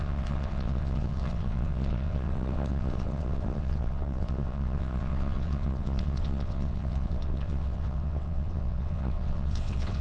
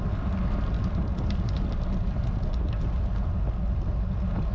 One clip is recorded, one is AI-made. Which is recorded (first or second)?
second